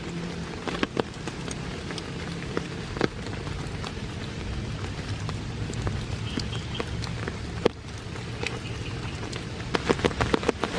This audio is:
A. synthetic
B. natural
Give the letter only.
B